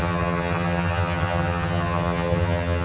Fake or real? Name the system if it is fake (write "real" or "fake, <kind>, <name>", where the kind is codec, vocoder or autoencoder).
fake, vocoder, HiFi-GAN